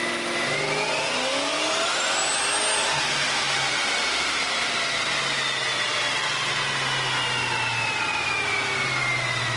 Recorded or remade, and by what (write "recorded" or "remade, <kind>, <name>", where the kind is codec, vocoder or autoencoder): recorded